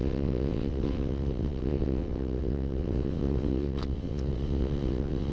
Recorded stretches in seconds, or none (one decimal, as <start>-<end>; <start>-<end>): none